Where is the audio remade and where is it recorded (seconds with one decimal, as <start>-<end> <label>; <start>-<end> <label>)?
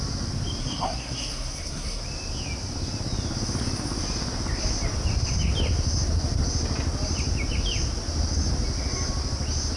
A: 0.0-0.6 recorded; 0.6-2.0 remade; 2.0-9.8 recorded